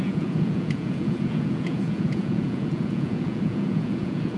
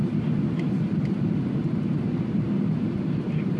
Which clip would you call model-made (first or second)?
first